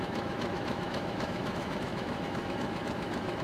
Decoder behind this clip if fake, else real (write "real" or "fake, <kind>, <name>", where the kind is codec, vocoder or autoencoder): fake, autoencoder, DAC-VAE